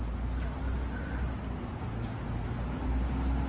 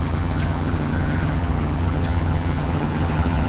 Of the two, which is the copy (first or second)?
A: second